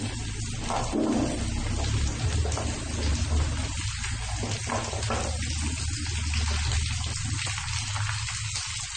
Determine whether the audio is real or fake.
real